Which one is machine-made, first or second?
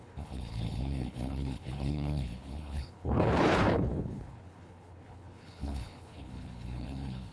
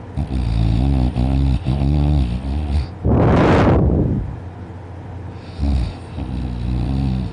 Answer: first